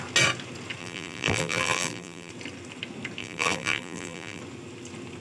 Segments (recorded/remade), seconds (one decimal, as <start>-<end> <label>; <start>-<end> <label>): 0.0-0.8 recorded; 0.8-2.3 remade; 2.3-3.2 recorded; 3.2-4.4 remade; 4.4-5.2 recorded